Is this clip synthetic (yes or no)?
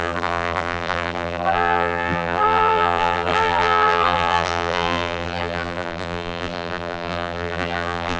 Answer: yes